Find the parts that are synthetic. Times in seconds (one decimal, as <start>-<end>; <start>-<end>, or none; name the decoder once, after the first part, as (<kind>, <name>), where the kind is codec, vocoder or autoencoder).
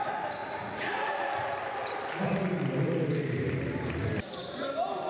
0.4-1.5 (vocoder, Vocos)